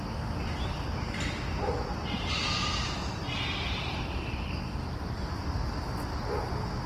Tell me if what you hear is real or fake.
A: real